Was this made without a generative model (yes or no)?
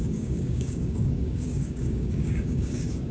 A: no